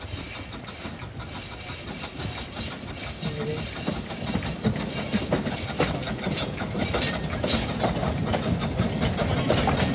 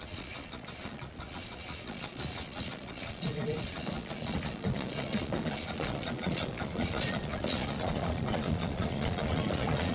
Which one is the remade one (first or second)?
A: second